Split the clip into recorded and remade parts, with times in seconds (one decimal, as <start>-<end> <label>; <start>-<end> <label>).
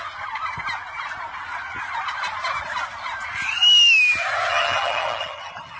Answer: 0.0-4.5 recorded; 4.5-5.8 remade